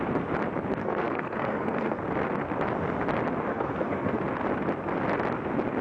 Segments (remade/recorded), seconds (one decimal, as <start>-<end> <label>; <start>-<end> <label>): 0.0-0.8 recorded; 0.8-2.0 remade; 2.0-3.5 recorded; 3.5-4.2 remade; 4.2-5.8 recorded